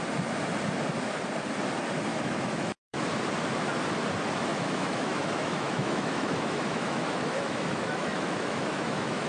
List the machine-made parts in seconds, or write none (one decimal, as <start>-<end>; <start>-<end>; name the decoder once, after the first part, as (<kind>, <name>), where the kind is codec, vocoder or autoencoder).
2.1-3.0 (autoencoder, DAC-VAE); 4.5-9.3